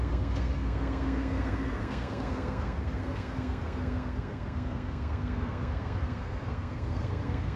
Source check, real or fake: fake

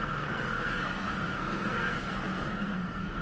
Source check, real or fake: fake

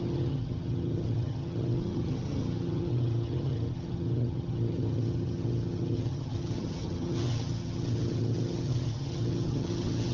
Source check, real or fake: fake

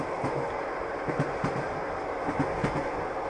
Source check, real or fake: real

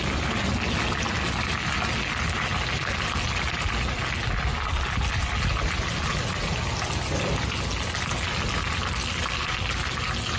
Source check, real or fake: real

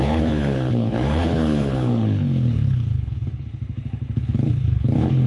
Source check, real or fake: fake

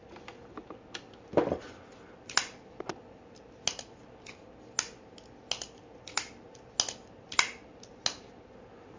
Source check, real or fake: real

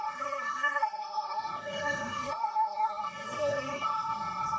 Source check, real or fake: fake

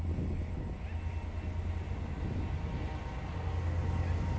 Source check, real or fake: real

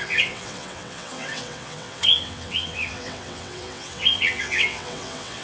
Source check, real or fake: fake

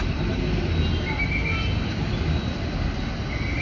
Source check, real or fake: real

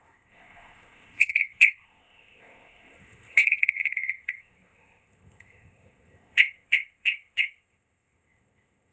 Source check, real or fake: fake